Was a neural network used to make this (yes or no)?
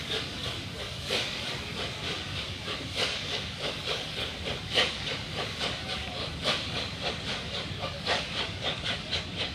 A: yes